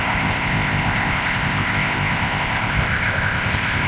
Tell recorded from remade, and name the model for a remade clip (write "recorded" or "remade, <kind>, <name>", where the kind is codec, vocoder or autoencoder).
remade, codec, ZipCodec